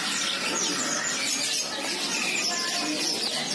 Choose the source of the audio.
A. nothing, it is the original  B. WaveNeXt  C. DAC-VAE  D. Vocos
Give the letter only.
A